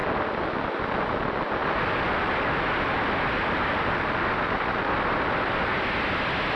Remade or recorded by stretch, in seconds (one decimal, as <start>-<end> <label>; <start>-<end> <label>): 0.0-6.6 recorded